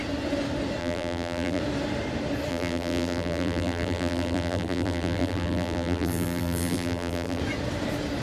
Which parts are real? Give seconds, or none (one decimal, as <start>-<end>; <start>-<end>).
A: 0.0-0.8; 1.6-2.5; 7.4-8.2